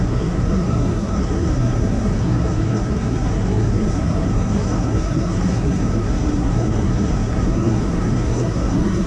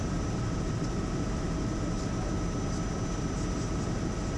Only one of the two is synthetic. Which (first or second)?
first